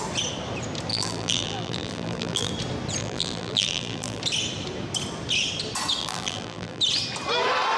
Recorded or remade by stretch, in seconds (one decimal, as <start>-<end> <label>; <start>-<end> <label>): 0.0-0.9 recorded; 0.9-2.5 remade; 2.5-3.0 recorded; 3.0-4.2 remade; 4.2-6.0 recorded; 6.0-6.8 remade; 6.8-7.8 recorded